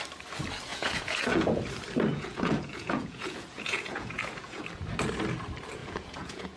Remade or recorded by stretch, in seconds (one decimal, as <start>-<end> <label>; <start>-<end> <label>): 0.0-0.7 recorded; 0.7-1.6 remade; 1.6-2.1 recorded; 2.1-4.6 remade; 4.6-5.8 recorded; 5.8-6.6 remade